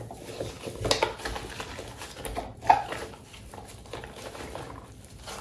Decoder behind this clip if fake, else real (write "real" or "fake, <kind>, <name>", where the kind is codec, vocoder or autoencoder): real